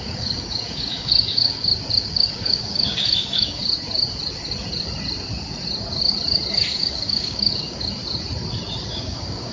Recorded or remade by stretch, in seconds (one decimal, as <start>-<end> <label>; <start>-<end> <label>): 0.0-3.6 remade; 3.6-6.8 recorded; 6.8-8.0 remade; 8.0-8.9 recorded; 8.9-9.5 remade